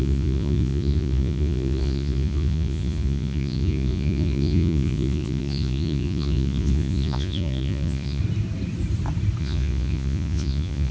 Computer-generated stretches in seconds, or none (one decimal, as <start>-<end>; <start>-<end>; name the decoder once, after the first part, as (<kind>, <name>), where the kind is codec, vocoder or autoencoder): 0.0-8.2 (vocoder, Vocos); 9.4-10.9